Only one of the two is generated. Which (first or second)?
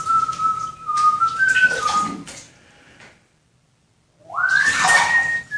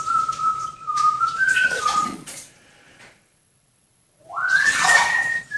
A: second